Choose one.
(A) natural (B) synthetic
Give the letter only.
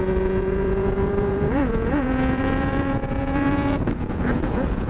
B